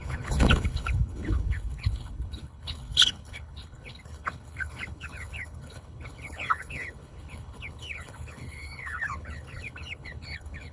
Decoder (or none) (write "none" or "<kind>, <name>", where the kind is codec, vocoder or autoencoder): codec, HILCodec